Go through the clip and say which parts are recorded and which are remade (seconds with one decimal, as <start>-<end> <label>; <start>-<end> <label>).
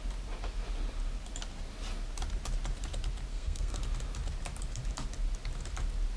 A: 0.0-3.3 recorded; 3.3-3.8 remade; 3.8-6.2 recorded